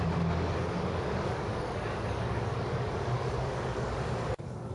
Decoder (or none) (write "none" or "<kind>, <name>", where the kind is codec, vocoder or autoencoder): codec, DAC